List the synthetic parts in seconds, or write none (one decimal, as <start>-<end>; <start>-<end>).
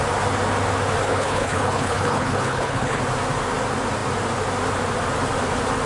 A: 1.0-3.0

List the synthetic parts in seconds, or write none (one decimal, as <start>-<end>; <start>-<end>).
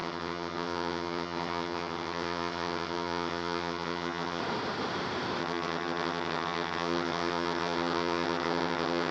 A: 0.0-4.4; 5.4-9.1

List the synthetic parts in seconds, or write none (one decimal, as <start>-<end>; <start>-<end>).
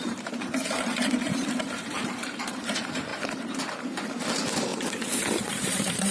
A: 0.0-3.1; 4.3-4.7; 5.5-6.1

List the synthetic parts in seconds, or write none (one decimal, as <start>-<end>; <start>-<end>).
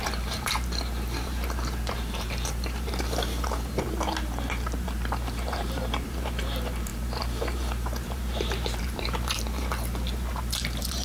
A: 0.0-11.0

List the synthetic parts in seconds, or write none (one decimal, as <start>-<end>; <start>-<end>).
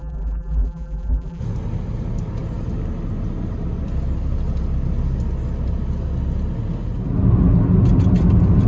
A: 0.0-1.4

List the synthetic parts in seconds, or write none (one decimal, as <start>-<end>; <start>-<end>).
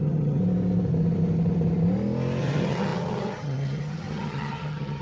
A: 0.0-0.4; 2.4-5.0